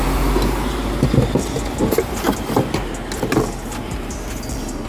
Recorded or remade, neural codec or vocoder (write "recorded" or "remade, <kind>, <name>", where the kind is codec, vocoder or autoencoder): recorded